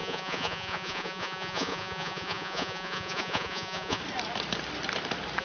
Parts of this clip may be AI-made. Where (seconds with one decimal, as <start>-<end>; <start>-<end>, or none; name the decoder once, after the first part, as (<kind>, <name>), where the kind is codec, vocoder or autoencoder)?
0.0-4.0 (vocoder, Vocos)